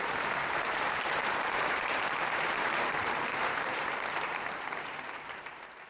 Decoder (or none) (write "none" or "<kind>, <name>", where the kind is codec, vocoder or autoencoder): vocoder, BigVGAN v2